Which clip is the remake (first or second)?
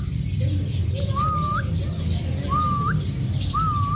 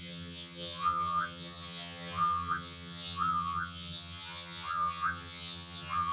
second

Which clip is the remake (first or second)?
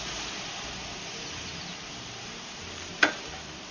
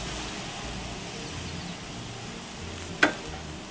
first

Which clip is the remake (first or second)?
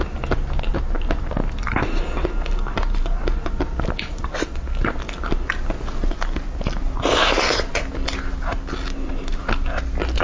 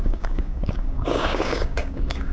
second